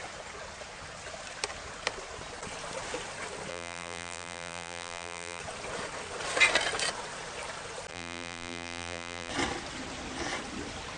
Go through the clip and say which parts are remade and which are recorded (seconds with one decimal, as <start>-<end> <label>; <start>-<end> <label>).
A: 0.0-3.5 recorded; 3.5-5.4 remade; 5.4-7.9 recorded; 7.9-9.3 remade; 9.3-11.0 recorded